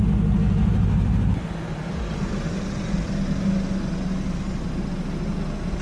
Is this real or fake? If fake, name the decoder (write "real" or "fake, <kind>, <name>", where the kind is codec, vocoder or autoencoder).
real